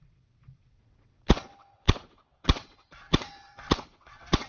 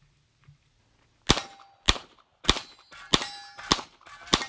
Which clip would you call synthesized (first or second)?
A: first